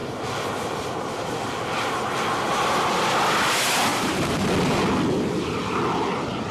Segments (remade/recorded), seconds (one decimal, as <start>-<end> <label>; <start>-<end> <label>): 0.0-3.9 recorded; 3.9-4.5 remade; 4.5-6.5 recorded